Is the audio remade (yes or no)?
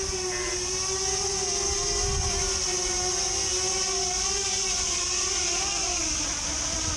no